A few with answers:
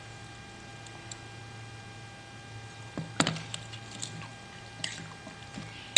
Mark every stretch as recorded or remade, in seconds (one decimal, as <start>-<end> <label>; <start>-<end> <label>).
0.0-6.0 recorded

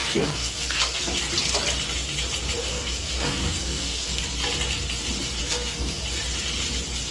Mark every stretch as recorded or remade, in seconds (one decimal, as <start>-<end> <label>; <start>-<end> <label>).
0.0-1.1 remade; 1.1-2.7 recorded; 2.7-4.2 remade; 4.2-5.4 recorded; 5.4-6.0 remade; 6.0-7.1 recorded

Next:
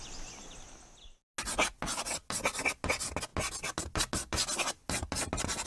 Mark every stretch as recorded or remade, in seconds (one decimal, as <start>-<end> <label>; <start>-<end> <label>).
0.0-5.7 recorded

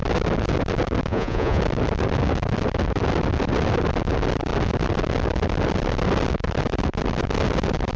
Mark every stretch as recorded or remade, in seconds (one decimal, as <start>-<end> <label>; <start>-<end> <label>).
0.0-1.1 recorded; 1.1-1.6 remade; 1.6-8.0 recorded